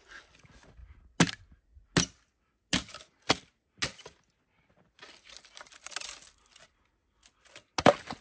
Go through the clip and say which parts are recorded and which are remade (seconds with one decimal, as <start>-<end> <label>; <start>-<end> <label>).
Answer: 0.0-8.2 recorded